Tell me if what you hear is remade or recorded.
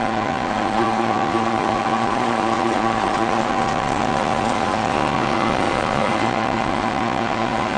remade